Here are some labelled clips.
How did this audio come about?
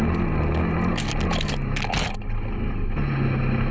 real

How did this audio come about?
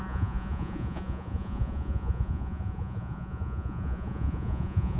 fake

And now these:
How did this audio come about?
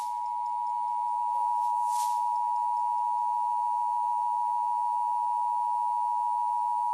real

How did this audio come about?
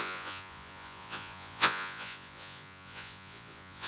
fake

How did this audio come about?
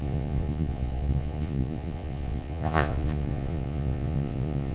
fake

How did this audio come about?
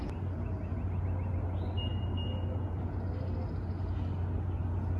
real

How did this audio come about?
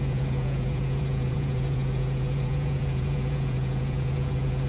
fake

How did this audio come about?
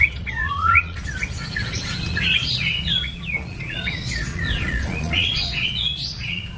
fake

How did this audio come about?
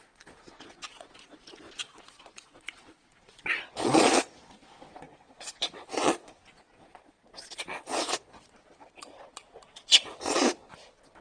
fake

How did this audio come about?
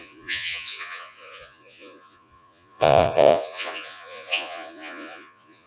fake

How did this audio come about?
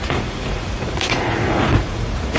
fake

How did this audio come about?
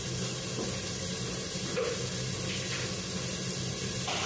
real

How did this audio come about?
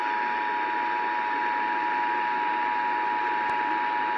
real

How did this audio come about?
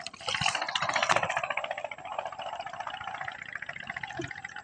real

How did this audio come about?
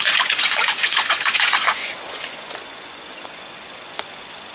fake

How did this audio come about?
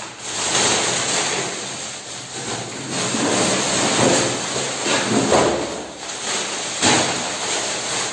real